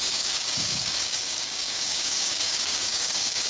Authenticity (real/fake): fake